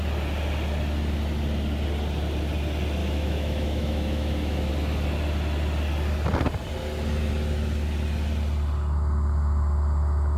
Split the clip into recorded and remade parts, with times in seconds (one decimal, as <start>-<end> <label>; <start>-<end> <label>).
0.0-3.0 recorded; 3.0-4.7 remade; 4.7-10.4 recorded